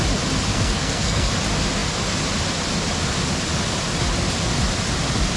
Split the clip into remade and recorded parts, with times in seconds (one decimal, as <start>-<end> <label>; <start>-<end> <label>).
0.0-0.5 recorded; 0.5-1.3 remade; 1.3-5.4 recorded